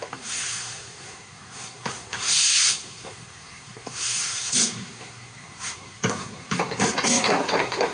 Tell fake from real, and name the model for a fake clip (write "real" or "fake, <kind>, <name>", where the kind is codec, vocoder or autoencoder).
fake, codec, SNAC